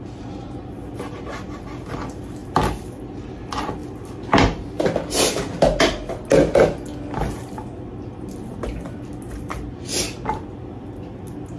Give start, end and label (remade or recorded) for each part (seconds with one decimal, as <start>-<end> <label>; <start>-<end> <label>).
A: 0.0-11.6 recorded

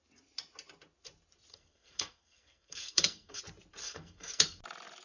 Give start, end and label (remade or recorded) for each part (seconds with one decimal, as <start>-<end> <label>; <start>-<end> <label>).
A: 0.0-1.5 recorded; 1.5-3.4 remade; 3.4-3.8 recorded; 3.8-4.6 remade; 4.6-5.0 recorded

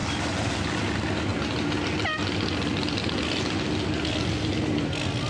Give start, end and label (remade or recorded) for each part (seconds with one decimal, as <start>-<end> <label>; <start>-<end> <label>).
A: 0.0-5.3 recorded

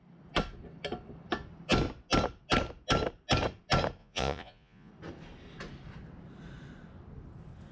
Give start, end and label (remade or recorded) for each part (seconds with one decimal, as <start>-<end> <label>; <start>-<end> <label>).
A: 0.0-4.0 recorded; 4.0-4.9 remade; 4.9-7.7 recorded

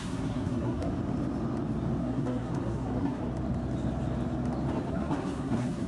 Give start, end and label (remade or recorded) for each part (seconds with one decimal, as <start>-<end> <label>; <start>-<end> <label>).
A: 0.0-0.9 remade; 0.9-2.0 recorded; 2.0-3.2 remade; 3.2-4.9 recorded; 4.9-5.9 remade

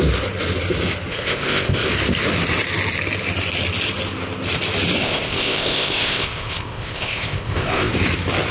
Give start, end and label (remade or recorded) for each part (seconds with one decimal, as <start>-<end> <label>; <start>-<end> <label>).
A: 0.0-1.1 recorded; 1.1-1.9 remade; 1.9-5.0 recorded; 5.0-7.9 remade; 7.9-8.5 recorded

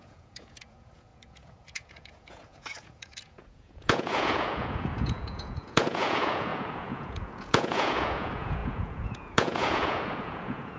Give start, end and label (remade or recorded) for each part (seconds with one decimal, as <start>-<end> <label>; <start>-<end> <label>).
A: 0.0-10.8 remade

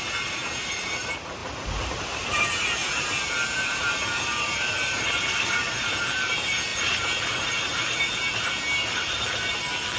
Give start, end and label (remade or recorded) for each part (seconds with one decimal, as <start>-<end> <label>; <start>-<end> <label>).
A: 0.0-10.0 remade